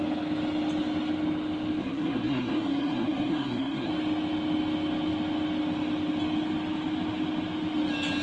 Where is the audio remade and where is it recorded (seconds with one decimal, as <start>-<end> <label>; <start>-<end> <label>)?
0.0-1.8 recorded; 1.8-3.9 remade; 3.9-8.2 recorded